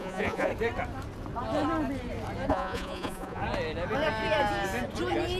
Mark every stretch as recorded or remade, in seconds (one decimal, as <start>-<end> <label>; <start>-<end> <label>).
0.0-0.5 remade; 0.5-2.5 recorded; 2.5-3.4 remade; 3.4-5.4 recorded